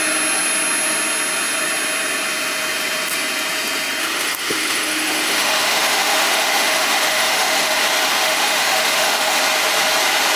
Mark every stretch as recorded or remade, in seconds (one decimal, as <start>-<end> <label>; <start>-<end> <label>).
0.0-4.0 recorded; 4.0-7.8 remade; 7.8-8.2 recorded; 8.2-9.4 remade; 9.4-10.4 recorded